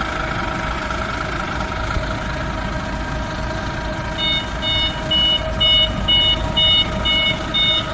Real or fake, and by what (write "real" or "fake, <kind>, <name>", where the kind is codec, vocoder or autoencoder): real